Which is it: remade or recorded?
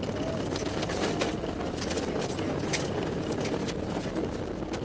recorded